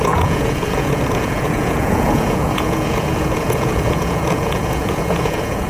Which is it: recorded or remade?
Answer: remade